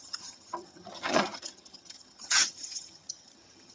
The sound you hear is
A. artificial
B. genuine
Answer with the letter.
A